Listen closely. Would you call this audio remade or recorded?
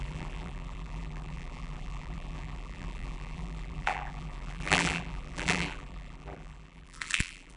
remade